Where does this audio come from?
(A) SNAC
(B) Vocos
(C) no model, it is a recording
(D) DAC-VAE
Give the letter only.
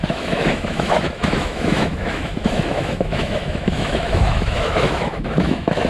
D